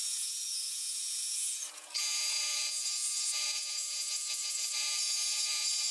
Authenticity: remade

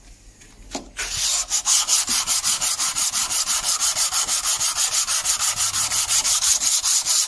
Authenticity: recorded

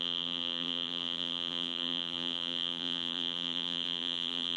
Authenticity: remade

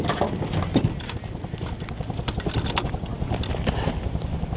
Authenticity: recorded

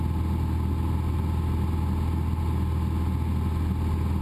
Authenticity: recorded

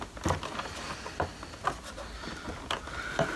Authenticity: recorded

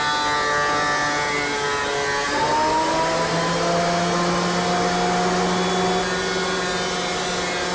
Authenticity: recorded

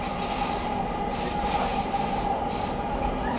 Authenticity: remade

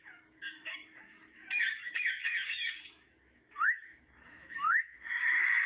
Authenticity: remade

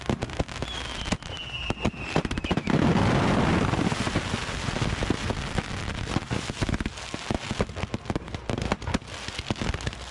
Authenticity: recorded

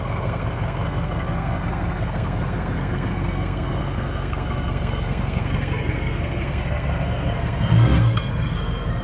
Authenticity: remade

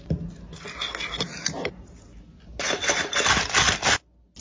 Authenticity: recorded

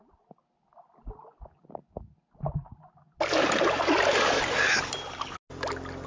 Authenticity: recorded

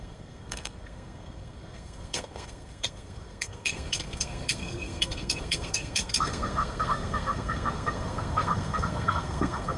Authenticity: remade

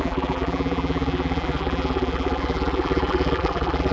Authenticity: remade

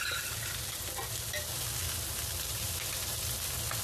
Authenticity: recorded